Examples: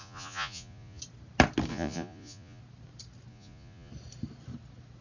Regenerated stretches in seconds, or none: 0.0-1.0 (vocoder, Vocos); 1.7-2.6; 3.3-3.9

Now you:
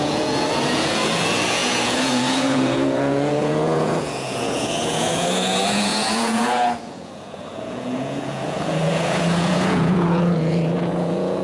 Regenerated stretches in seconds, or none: 0.0-11.4 (vocoder, Vocos)

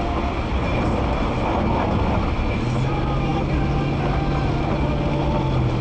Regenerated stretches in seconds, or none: none

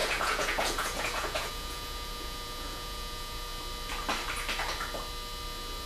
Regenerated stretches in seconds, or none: 0.0-3.5 (vocoder, Vocos)

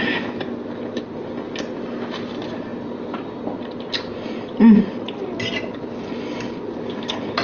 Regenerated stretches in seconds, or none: none

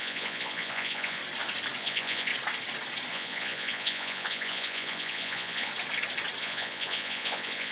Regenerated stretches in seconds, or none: 0.0-1.2 (vocoder, Vocos); 1.8-2.3; 3.1-5.7; 6.4-7.7

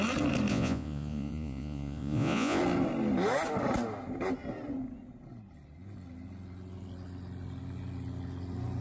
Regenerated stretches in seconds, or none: 0.5-2.6 (vocoder, Vocos)